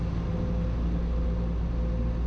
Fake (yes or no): no